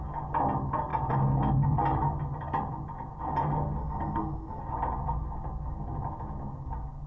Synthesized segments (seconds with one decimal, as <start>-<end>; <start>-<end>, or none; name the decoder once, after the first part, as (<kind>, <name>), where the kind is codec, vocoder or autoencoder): 3.8-4.6 (codec, SNAC)